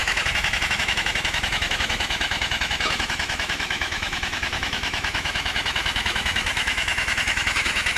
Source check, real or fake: fake